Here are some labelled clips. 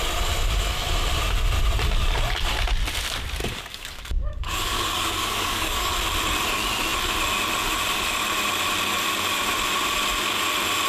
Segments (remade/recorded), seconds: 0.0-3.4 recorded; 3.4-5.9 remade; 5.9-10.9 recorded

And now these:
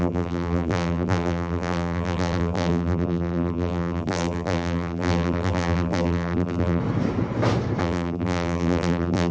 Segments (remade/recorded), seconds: 0.0-6.8 remade; 6.8-7.8 recorded; 7.8-9.3 remade

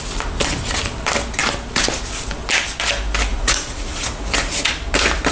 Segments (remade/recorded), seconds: 0.0-3.3 recorded; 3.3-4.7 remade; 4.7-5.3 recorded

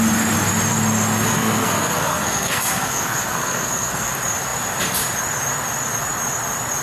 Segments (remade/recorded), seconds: 0.0-1.3 recorded; 1.3-4.1 remade; 4.1-6.8 recorded

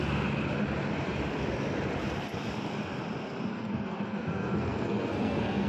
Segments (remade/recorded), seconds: 0.0-3.5 recorded; 3.5-5.7 remade

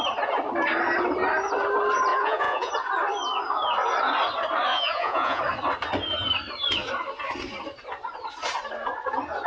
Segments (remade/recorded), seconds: 0.0-2.1 recorded; 2.1-2.7 remade; 2.7-4.7 recorded; 4.7-5.4 remade; 5.4-9.5 recorded

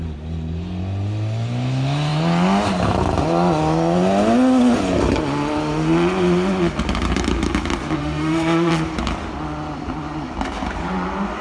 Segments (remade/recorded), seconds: 0.0-8.0 recorded; 8.0-8.7 remade; 8.7-11.4 recorded

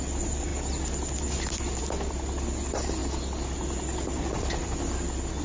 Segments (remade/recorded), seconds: 0.0-5.4 recorded